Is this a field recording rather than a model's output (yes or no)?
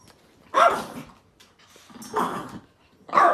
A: yes